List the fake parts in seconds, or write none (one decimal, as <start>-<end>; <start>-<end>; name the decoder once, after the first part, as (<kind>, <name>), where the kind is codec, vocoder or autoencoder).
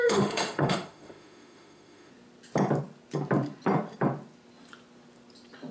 0.0-2.1 (autoencoder, DAC-VAE)